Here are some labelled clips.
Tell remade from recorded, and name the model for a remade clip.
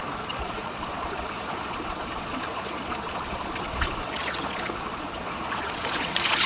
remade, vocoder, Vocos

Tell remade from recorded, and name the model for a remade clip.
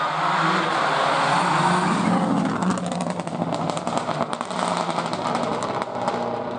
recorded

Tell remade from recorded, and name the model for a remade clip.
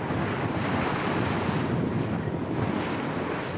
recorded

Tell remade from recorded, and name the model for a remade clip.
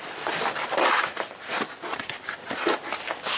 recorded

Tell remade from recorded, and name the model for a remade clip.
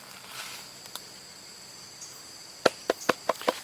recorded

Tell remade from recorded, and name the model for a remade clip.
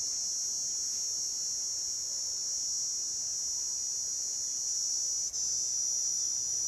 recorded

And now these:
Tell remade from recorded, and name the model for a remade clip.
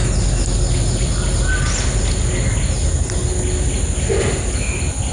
recorded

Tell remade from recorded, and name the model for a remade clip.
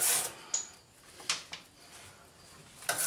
recorded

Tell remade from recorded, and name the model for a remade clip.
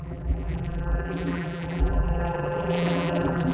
remade, vocoder, BigVGAN v2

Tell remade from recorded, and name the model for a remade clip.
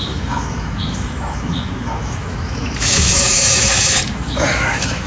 remade, autoencoder, DAC-VAE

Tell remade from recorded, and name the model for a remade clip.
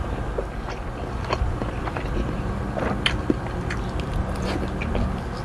recorded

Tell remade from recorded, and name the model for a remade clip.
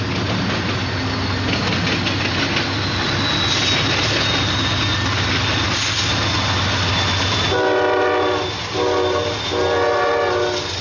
recorded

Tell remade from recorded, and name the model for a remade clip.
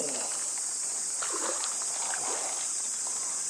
recorded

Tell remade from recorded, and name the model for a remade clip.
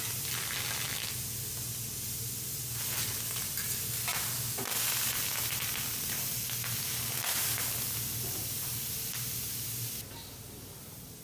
recorded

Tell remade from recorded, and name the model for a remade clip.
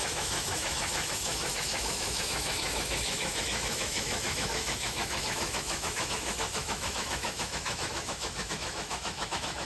remade, autoencoder, DAC-VAE